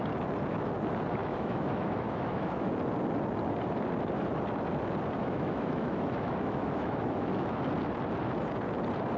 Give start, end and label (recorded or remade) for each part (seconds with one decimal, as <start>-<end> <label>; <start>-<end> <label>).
0.0-1.2 recorded; 1.2-2.7 remade; 2.7-5.2 recorded; 5.2-7.6 remade; 7.6-9.2 recorded